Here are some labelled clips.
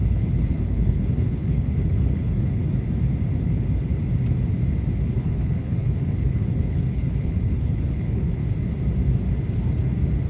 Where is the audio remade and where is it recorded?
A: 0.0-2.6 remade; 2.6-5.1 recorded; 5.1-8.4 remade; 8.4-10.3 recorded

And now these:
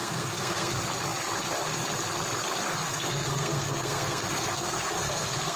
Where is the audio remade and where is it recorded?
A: 0.0-0.7 remade; 0.7-2.7 recorded; 2.7-5.6 remade

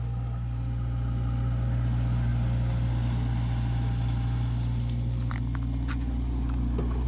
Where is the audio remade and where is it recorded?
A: 0.0-7.1 recorded